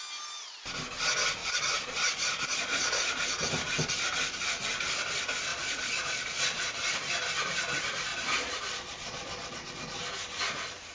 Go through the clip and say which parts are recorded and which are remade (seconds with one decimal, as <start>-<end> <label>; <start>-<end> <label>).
0.0-1.4 recorded; 1.4-3.1 remade; 3.1-5.5 recorded; 5.5-6.7 remade; 6.7-8.1 recorded; 8.1-9.7 remade; 9.7-10.9 recorded

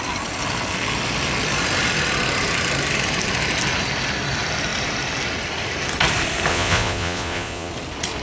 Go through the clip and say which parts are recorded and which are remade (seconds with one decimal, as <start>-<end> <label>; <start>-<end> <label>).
0.0-6.5 recorded; 6.5-7.7 remade; 7.7-8.2 recorded

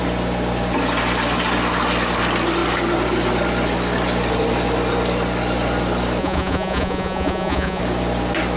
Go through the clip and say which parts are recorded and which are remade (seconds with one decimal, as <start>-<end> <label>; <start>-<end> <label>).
0.0-6.2 recorded; 6.2-7.8 remade; 7.8-8.6 recorded